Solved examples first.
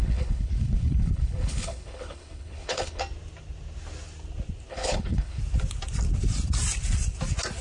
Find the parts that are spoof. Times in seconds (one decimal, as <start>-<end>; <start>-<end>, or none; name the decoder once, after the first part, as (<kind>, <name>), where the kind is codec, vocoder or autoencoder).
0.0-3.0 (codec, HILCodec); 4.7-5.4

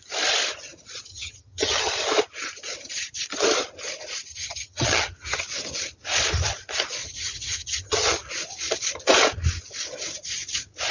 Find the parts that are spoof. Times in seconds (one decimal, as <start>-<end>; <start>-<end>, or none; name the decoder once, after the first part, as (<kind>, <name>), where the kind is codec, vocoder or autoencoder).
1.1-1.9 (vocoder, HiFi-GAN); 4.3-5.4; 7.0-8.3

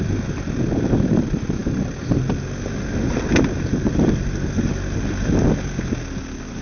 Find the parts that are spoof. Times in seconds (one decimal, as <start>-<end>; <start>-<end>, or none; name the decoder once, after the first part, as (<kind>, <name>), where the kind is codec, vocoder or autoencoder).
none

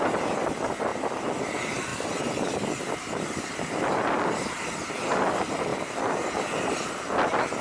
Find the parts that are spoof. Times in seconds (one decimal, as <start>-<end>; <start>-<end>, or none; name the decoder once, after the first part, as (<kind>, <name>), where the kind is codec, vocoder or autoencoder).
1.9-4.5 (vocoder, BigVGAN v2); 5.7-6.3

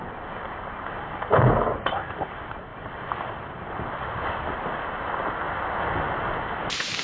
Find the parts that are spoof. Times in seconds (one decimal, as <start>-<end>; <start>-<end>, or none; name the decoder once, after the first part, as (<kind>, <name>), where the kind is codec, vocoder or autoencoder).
none

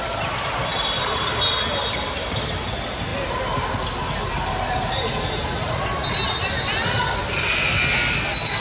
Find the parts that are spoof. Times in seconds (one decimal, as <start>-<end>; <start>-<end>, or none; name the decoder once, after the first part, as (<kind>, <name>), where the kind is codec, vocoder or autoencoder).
none

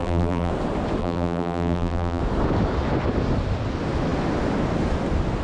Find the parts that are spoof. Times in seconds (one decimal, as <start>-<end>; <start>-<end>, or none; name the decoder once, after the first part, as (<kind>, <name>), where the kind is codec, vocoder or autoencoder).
0.0-0.5 (vocoder, BigVGAN v2); 1.0-2.2

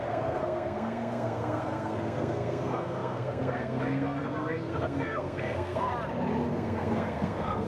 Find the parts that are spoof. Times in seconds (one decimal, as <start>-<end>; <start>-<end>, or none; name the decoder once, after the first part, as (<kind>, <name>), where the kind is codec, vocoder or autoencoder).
0.0-5.9 (codec, SNAC); 6.5-7.7